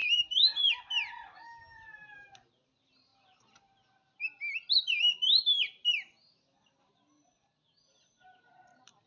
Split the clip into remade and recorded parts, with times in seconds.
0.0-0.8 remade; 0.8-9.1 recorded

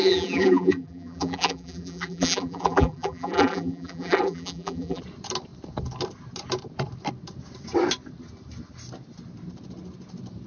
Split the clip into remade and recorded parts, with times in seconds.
0.0-5.0 remade; 5.0-10.5 recorded

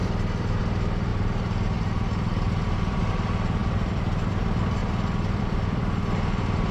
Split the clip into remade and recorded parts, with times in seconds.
0.0-0.6 remade; 0.6-1.1 recorded; 1.1-3.1 remade; 3.1-6.7 recorded

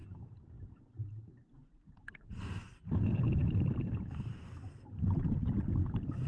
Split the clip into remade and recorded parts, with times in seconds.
0.0-3.4 recorded; 3.4-5.7 remade; 5.7-6.3 recorded

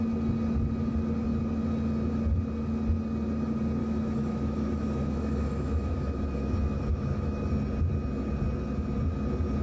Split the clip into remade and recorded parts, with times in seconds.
0.0-3.8 recorded; 3.8-7.5 remade; 7.5-9.6 recorded

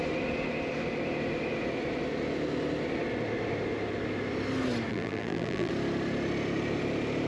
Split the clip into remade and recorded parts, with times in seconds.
0.0-4.9 recorded; 4.9-5.7 remade; 5.7-7.3 recorded

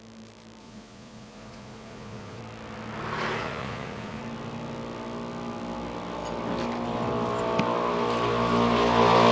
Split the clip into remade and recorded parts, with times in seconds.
0.0-0.6 recorded; 0.6-2.4 remade; 2.4-3.4 recorded; 3.4-4.2 remade; 4.2-9.3 recorded

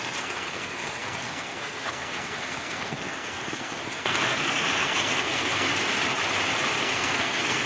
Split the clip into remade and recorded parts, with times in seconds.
0.0-5.7 remade; 5.7-6.8 recorded; 6.8-7.7 remade